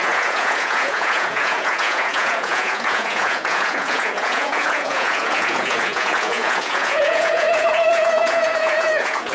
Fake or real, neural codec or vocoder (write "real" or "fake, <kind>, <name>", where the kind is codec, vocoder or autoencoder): fake, vocoder, Vocos